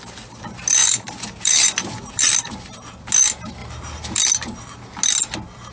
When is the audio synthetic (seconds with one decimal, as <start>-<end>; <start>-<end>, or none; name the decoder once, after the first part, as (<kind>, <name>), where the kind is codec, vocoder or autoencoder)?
0.8-2.2 (vocoder, BigVGAN v2)